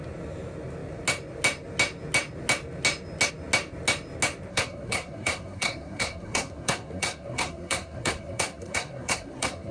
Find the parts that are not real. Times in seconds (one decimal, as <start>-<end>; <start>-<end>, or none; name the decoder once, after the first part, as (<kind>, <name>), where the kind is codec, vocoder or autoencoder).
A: 4.5-9.7 (codec, SNAC)